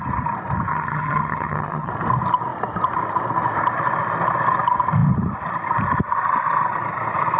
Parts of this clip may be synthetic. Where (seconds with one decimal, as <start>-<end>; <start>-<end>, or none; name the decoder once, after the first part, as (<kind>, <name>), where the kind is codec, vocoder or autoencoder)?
0.7-1.9 (vocoder, HiFi-GAN)